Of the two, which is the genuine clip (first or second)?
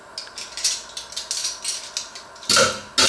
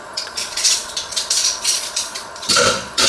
first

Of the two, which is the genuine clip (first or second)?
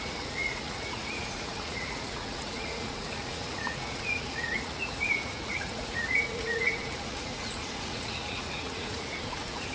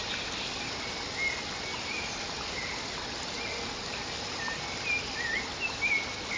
second